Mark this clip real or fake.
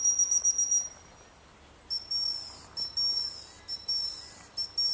real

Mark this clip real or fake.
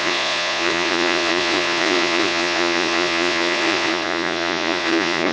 fake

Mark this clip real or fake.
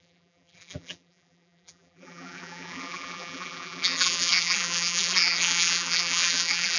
fake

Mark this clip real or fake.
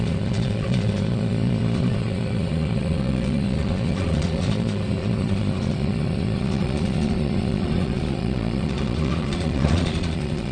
fake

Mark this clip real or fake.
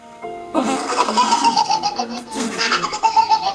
fake